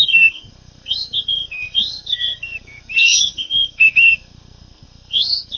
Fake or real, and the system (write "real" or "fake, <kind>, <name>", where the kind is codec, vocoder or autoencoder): fake, codec, SNAC